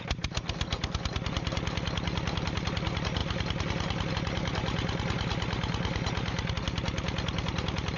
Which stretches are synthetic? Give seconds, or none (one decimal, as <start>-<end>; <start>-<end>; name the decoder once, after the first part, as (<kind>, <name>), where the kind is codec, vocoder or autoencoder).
none